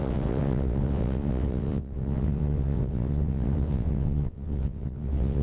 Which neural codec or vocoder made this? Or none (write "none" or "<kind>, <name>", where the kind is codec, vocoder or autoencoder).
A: vocoder, WaveNeXt